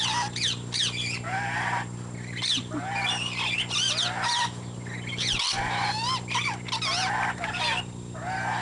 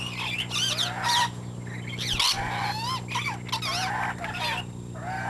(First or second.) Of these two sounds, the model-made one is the first